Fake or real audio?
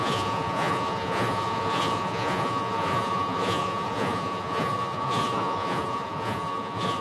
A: fake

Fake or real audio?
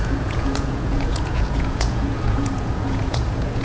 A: fake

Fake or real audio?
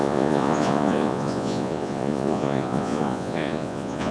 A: fake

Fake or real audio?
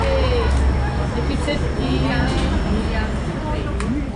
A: real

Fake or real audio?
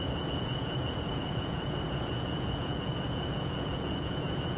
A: fake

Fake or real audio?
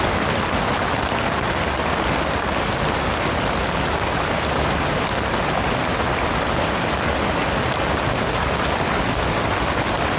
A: real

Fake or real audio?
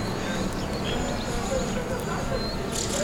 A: real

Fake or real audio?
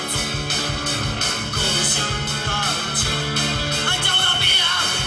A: real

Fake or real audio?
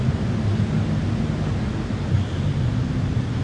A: real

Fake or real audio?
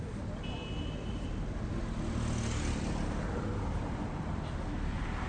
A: real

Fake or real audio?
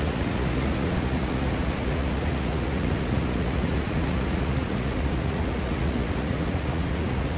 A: fake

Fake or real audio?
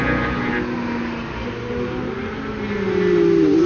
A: real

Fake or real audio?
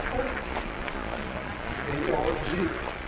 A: fake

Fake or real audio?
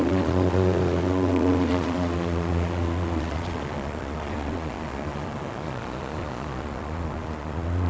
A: fake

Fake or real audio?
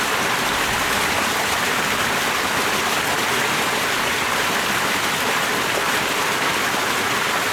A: real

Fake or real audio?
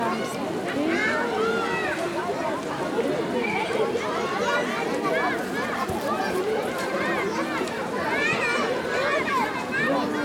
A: real